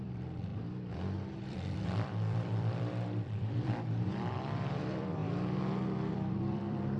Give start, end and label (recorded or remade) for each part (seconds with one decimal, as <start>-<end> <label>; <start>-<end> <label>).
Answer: 0.0-0.5 remade; 0.5-1.4 recorded; 1.4-5.2 remade; 5.2-6.1 recorded; 6.1-7.0 remade

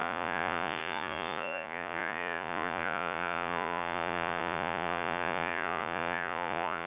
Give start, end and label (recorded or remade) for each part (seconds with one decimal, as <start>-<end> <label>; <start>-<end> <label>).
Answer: 0.0-6.9 remade

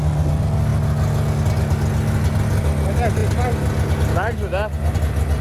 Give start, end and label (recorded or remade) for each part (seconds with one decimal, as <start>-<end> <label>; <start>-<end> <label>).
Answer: 0.0-5.4 recorded

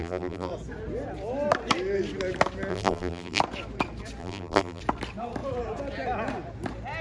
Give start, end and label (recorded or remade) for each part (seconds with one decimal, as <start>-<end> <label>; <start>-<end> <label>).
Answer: 0.0-0.5 remade; 0.5-2.7 recorded; 2.7-3.4 remade; 3.4-4.2 recorded; 4.2-4.8 remade; 4.8-7.0 recorded

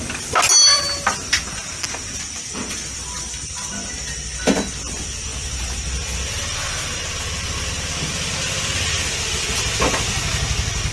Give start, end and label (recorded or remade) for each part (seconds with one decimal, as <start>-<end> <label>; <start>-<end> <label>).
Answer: 0.0-0.6 recorded; 0.6-2.2 remade; 2.2-5.3 recorded; 5.3-7.7 remade; 7.7-10.9 recorded

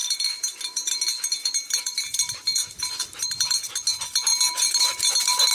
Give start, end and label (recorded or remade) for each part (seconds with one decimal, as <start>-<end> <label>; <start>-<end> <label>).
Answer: 0.0-0.9 remade; 0.9-1.4 recorded; 1.4-3.7 remade; 3.7-4.3 recorded; 4.3-5.5 remade

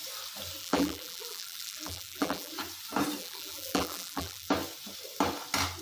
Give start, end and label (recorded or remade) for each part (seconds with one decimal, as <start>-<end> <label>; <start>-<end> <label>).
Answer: 0.0-0.6 recorded; 0.6-2.5 remade; 2.5-3.2 recorded; 3.2-4.5 remade; 4.5-5.8 recorded